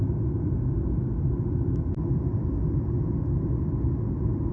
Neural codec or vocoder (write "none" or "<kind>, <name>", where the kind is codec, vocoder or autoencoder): none